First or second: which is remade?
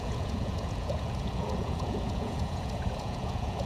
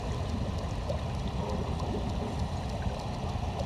first